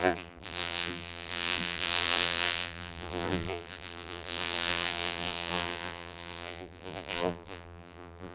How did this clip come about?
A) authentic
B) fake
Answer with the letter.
B